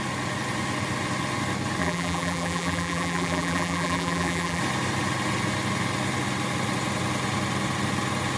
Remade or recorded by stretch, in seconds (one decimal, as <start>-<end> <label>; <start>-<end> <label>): 0.0-1.8 recorded; 1.8-4.6 remade; 4.6-8.4 recorded